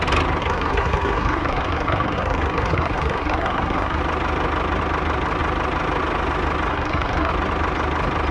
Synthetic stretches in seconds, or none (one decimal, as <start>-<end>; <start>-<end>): 0.4-4.0; 6.7-7.3